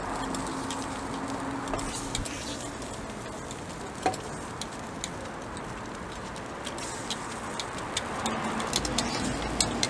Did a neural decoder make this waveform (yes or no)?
no